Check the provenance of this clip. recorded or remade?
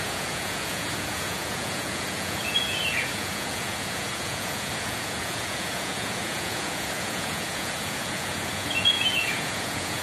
remade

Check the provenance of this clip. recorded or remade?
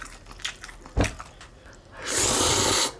recorded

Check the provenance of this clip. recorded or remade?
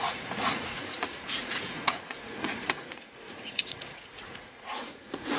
remade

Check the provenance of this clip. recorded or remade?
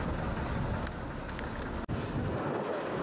recorded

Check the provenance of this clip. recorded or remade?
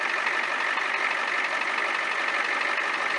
recorded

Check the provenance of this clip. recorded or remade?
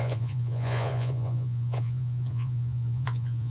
remade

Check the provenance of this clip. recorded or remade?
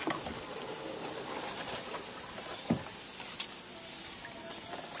recorded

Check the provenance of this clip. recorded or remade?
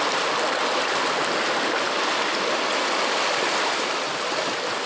recorded